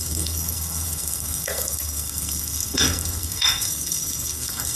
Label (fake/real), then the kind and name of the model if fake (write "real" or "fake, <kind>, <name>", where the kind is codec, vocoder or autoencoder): fake, codec, SNAC